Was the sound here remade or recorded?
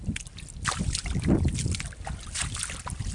recorded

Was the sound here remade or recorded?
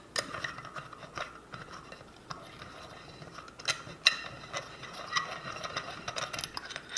recorded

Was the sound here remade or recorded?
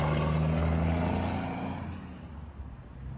recorded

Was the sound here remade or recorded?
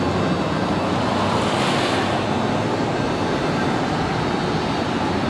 recorded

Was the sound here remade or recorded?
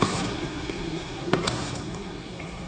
remade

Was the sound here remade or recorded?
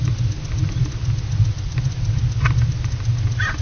recorded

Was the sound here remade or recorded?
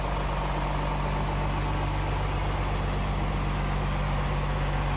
recorded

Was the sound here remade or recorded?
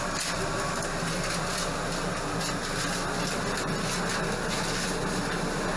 recorded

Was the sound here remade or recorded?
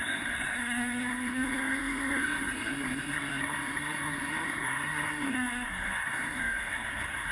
remade